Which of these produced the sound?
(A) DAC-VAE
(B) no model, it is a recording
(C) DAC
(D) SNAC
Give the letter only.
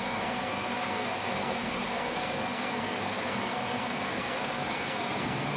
D